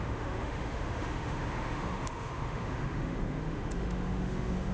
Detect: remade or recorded remade